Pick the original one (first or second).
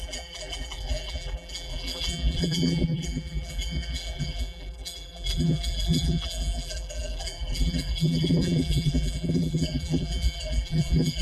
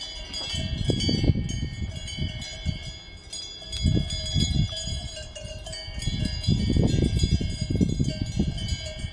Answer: second